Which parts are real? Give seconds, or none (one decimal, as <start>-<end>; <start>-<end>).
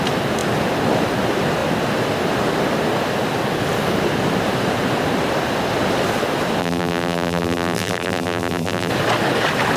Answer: 0.0-6.6; 8.9-9.8